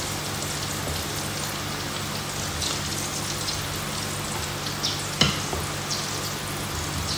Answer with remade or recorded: recorded